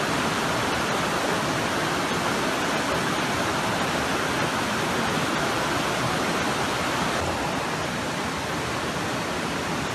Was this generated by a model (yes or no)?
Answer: no